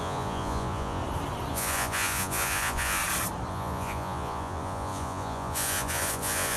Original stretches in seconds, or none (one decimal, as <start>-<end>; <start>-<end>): 1.0-1.5; 3.0-3.5